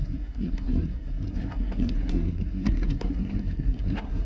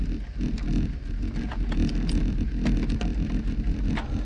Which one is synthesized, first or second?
first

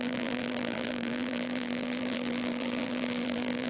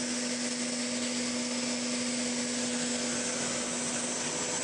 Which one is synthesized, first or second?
first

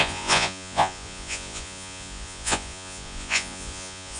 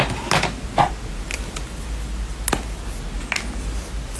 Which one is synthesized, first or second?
first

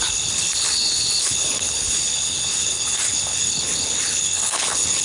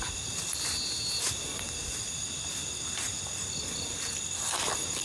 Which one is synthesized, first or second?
first